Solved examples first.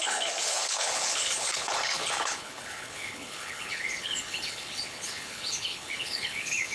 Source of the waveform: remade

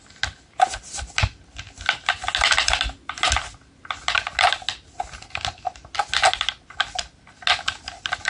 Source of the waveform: recorded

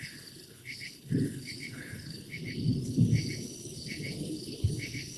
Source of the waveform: remade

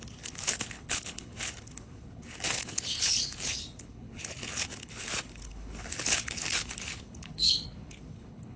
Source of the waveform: remade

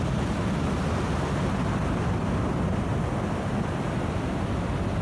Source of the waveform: recorded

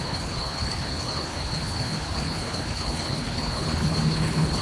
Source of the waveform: remade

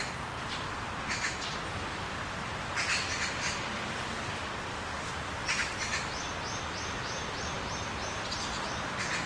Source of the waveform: recorded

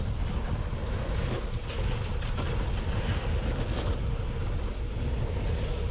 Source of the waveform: recorded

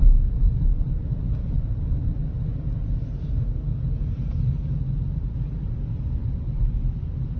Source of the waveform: recorded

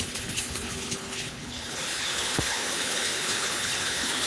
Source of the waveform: remade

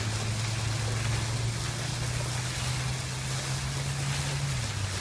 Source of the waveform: recorded